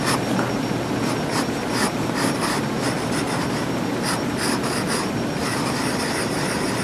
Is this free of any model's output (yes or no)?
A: yes